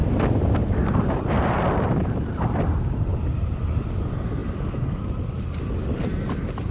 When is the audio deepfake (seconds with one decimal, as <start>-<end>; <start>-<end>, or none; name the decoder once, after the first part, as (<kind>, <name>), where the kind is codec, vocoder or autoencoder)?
none